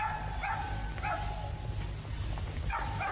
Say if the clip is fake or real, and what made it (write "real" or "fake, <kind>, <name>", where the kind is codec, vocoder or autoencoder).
real